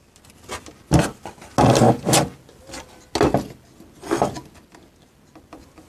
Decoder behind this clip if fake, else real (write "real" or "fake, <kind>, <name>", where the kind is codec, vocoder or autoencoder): real